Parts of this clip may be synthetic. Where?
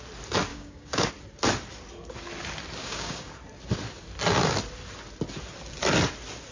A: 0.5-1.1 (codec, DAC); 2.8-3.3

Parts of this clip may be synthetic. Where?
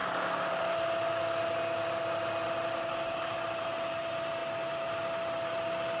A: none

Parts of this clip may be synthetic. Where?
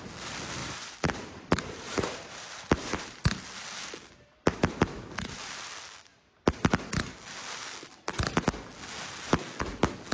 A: 0.6-3.2 (vocoder, BigVGAN v2)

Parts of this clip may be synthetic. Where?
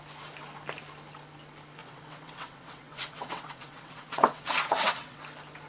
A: 1.8-5.2 (vocoder, WaveNeXt)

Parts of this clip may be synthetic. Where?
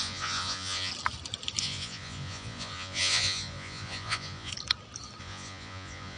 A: 0.0-0.9 (vocoder, Vocos); 1.6-4.5; 5.2-6.2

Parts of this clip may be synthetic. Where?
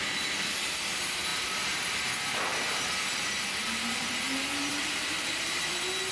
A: 1.3-2.1 (vocoder, BigVGAN v2); 2.5-4.1; 4.7-5.6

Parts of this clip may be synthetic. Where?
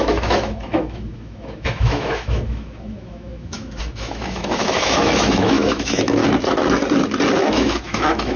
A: 0.0-6.2 (autoencoder, DAC-VAE); 7.4-8.4